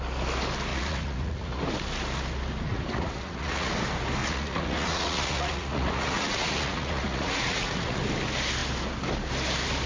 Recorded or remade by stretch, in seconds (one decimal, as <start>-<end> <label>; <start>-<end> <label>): 0.0-0.7 recorded; 0.7-1.6 remade; 1.6-2.7 recorded; 2.7-3.7 remade; 3.7-4.2 recorded; 4.2-8.0 remade; 8.0-9.9 recorded